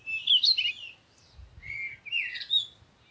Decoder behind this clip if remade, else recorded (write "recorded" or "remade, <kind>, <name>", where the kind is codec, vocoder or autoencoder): recorded